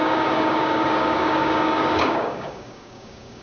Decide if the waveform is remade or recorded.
remade